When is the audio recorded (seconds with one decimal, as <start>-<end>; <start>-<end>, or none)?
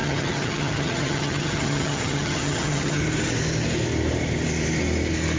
3.0-5.4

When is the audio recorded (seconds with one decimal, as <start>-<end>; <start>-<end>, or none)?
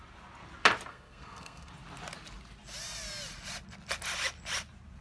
0.0-0.9; 1.7-5.0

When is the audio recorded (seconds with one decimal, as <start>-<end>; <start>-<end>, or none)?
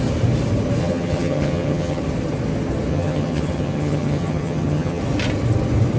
0.0-0.8; 2.0-2.9; 5.0-6.0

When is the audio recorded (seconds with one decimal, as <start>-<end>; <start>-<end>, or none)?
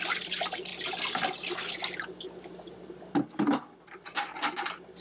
0.7-2.3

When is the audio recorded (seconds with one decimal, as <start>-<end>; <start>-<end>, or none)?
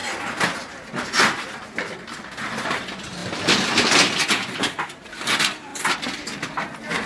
0.0-7.1